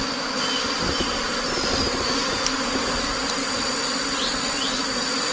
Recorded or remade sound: recorded